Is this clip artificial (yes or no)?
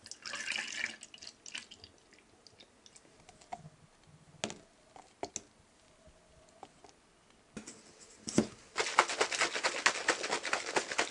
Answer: no